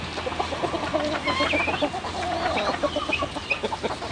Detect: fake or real real